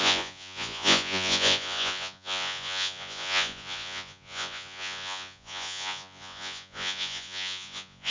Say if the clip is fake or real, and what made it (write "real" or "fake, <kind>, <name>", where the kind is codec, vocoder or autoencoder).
fake, vocoder, Vocos